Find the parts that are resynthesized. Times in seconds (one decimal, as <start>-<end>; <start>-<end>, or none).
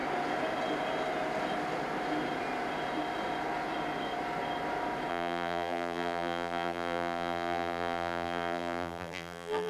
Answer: 5.1-9.7